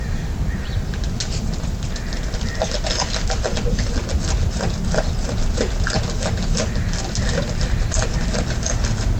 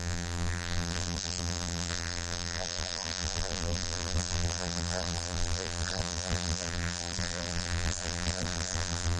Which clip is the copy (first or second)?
second